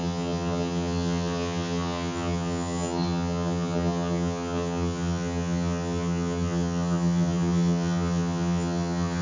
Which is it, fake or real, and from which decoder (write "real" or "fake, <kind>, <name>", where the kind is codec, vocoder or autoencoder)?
fake, vocoder, HiFi-GAN